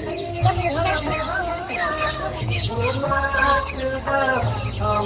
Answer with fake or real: fake